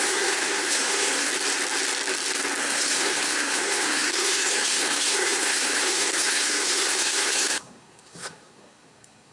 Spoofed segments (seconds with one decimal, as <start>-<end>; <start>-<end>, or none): 0.0-1.3; 2.6-9.3